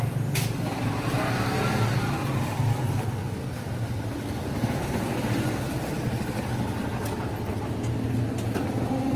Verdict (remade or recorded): recorded